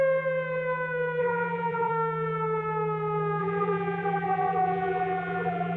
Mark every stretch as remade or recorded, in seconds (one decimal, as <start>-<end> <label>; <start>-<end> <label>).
0.0-1.2 recorded; 1.2-1.9 remade; 1.9-3.4 recorded; 3.4-5.8 remade